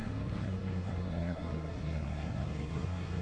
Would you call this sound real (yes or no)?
no